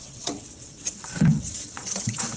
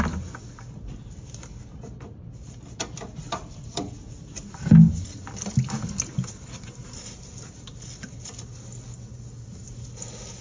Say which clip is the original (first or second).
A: second